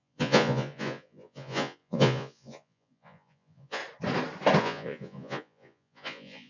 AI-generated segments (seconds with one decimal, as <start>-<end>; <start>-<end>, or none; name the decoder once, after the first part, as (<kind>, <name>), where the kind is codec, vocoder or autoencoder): 0.0-3.8 (vocoder, Vocos); 4.6-6.5